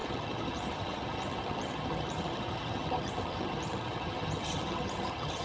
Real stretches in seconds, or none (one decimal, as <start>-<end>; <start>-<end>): none

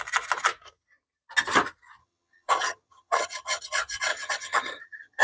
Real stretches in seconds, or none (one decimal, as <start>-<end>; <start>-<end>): 0.0-2.0; 3.6-4.1

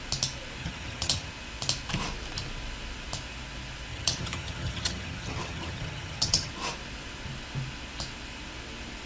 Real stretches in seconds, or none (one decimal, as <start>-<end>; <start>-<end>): 0.0-0.6; 1.3-3.9; 6.5-9.1

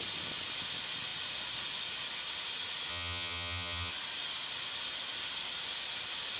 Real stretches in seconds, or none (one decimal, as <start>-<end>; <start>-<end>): 0.0-2.9; 3.9-6.4

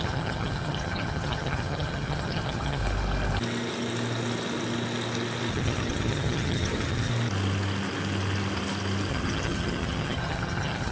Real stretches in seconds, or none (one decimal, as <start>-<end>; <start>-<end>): 2.8-5.5; 7.1-9.1